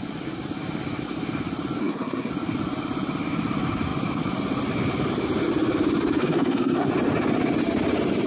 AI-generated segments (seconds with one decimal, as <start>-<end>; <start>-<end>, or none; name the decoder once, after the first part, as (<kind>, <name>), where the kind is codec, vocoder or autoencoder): 1.8-2.3 (codec, SNAC); 6.2-6.9